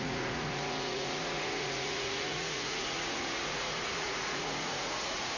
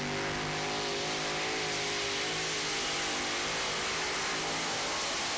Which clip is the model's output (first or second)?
first